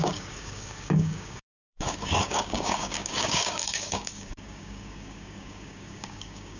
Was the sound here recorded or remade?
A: remade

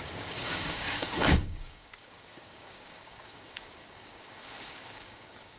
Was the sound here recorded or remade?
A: remade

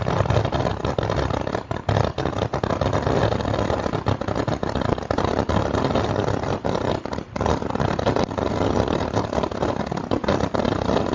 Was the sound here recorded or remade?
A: recorded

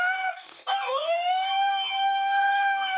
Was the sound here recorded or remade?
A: remade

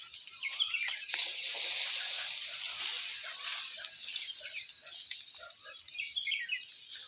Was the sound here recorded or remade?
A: recorded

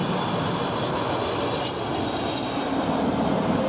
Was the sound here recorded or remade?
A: recorded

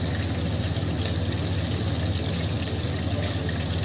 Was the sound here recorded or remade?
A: recorded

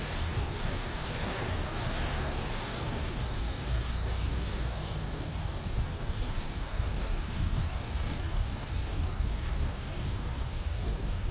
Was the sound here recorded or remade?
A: remade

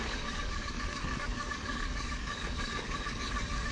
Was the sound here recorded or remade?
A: remade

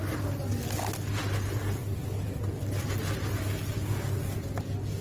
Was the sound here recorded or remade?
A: recorded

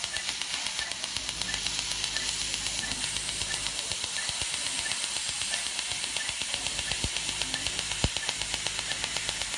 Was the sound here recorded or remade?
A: recorded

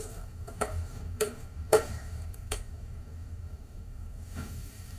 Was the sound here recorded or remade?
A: remade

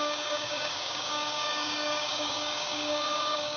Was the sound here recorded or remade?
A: remade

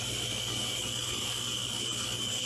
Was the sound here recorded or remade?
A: remade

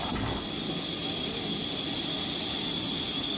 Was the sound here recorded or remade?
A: recorded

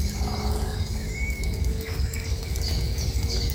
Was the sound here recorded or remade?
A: remade